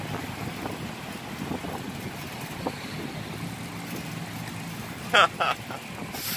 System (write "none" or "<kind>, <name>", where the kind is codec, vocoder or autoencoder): none